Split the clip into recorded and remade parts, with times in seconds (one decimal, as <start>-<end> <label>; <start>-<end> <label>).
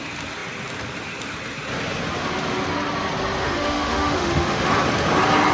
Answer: 0.0-3.4 recorded; 3.4-4.7 remade; 4.7-5.5 recorded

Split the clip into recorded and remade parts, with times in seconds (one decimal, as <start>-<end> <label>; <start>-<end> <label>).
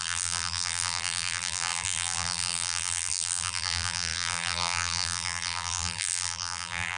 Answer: 0.0-7.0 remade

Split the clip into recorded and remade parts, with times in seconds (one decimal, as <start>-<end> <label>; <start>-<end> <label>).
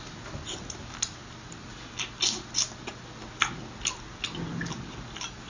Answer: 0.0-5.5 recorded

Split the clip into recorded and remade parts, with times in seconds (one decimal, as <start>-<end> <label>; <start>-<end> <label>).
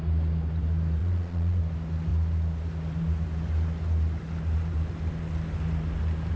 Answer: 0.0-1.0 recorded; 1.0-1.6 remade; 1.6-6.4 recorded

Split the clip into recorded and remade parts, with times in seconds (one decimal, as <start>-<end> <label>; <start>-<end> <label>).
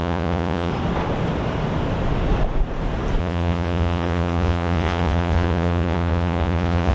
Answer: 0.0-0.7 remade; 0.7-3.2 recorded; 3.2-6.9 remade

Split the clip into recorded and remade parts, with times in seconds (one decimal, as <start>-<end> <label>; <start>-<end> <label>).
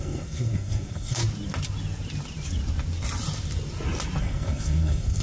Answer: 0.0-1.2 remade; 1.2-4.2 recorded; 4.2-5.2 remade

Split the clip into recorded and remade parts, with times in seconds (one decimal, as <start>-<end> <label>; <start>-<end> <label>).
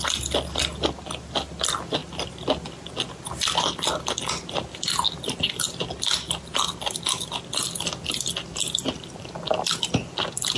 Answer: 0.0-10.6 recorded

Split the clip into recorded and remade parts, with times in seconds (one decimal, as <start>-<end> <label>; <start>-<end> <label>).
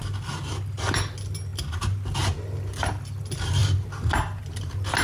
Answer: 0.0-5.0 recorded